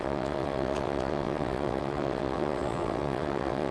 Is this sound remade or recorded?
remade